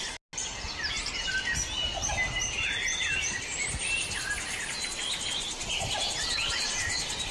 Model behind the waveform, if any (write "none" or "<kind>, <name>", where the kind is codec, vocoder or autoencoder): none